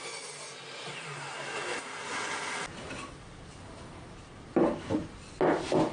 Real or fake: real